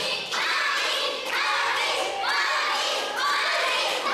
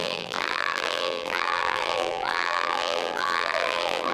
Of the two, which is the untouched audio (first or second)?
first